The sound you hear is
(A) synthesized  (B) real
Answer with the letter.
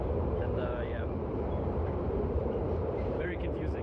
A